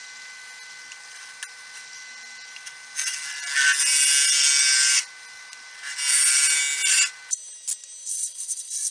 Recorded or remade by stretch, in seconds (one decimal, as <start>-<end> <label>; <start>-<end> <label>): 0.0-8.1 recorded; 8.1-8.9 remade

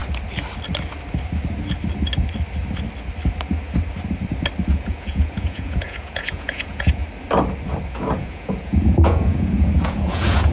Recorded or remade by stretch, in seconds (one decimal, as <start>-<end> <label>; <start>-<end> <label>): 0.0-4.7 recorded; 4.7-7.0 remade; 7.0-7.9 recorded; 7.9-10.5 remade